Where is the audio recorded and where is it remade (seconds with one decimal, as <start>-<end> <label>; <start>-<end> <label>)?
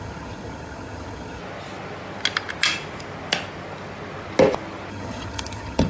0.0-1.4 remade; 1.4-4.9 recorded; 4.9-5.9 remade